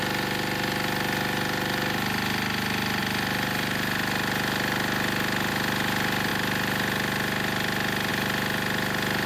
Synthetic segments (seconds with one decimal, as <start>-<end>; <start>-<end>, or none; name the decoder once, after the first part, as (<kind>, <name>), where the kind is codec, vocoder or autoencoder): none